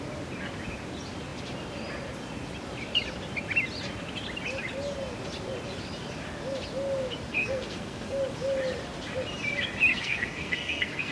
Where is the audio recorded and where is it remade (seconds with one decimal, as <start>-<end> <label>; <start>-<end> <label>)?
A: 0.0-7.3 recorded; 7.3-8.2 remade; 8.2-9.9 recorded; 9.9-11.1 remade